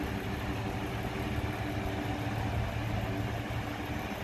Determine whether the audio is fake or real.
real